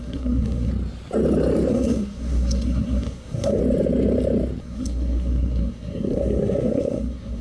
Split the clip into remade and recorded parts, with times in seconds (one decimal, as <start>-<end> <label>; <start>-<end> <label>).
0.0-0.7 remade; 0.7-1.7 recorded; 1.7-3.6 remade; 3.6-4.6 recorded; 4.6-7.4 remade